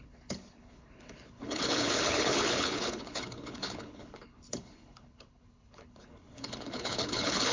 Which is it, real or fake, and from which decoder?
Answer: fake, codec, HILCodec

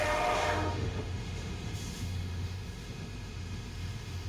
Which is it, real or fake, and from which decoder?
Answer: fake, autoencoder, DAC-VAE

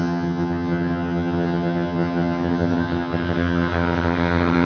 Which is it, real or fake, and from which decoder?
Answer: fake, vocoder, HiFi-GAN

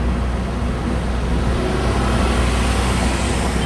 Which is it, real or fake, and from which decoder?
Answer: real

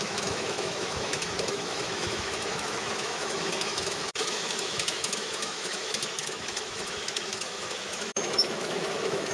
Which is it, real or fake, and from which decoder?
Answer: fake, autoencoder, DAC-VAE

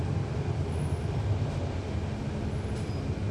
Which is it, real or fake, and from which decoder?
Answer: real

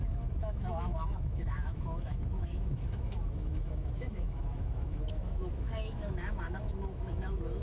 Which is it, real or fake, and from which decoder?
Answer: fake, autoencoder, DAC-VAE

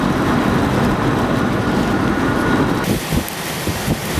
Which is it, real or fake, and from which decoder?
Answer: real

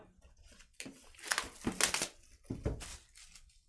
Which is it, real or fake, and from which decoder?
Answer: real